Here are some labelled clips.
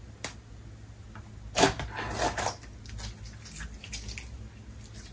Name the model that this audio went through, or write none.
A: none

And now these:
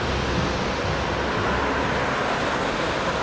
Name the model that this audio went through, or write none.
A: none